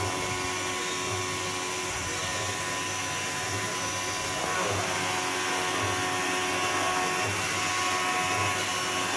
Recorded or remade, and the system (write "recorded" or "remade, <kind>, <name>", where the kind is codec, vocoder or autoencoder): recorded